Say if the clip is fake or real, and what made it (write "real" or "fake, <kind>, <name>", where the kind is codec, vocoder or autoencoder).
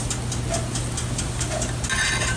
real